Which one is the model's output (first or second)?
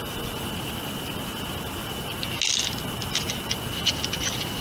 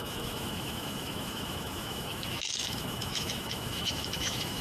second